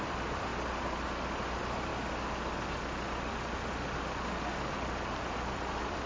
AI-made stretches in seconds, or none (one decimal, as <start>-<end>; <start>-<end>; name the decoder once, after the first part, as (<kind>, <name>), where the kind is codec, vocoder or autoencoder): 0.0-0.5 (vocoder, BigVGAN v2); 1.5-1.9; 4.7-6.1